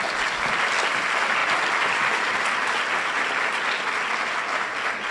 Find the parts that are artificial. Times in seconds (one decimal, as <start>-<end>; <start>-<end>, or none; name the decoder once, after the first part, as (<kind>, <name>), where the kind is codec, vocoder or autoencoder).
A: none